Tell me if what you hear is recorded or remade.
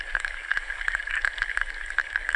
remade